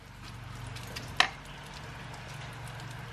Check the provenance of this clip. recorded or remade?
recorded